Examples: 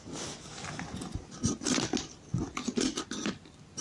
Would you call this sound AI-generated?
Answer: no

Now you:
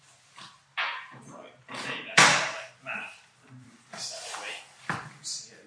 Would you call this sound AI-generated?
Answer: yes